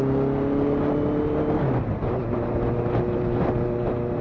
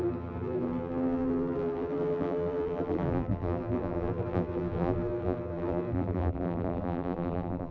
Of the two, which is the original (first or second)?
first